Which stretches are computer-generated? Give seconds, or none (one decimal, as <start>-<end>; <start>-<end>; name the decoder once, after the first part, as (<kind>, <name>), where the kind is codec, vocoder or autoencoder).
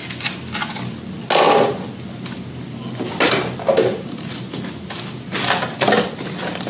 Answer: none